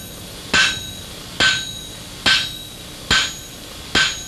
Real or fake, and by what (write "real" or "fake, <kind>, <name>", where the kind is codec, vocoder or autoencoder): real